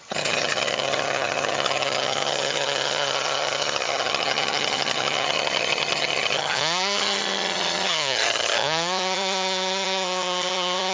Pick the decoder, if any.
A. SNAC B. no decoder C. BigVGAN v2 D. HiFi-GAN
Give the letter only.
D